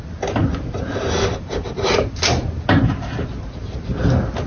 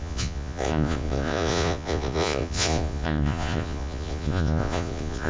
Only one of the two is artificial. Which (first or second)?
second